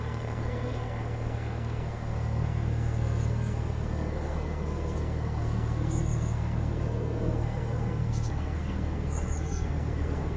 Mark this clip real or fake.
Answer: fake